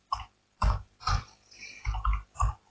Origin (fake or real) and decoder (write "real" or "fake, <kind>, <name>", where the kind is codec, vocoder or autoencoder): fake, vocoder, BigVGAN v2